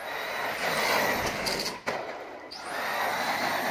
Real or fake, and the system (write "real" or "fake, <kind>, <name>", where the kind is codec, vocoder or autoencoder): real